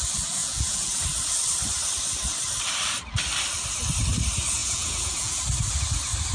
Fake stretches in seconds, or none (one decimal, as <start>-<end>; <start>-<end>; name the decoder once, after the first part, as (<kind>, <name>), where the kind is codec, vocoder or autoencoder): 0.4-1.0 (vocoder, Vocos); 4.6-5.4